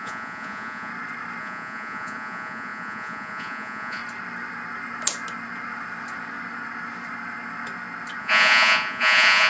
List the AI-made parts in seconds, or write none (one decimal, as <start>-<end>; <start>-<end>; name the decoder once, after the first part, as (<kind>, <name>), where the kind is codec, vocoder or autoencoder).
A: 0.0-0.9 (vocoder, Vocos); 1.4-4.0; 8.2-9.5